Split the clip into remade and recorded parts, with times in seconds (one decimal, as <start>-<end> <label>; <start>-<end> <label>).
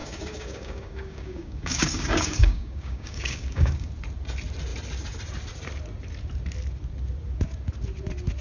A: 0.0-3.9 remade; 3.9-8.4 recorded